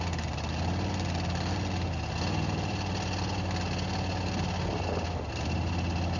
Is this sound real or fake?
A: real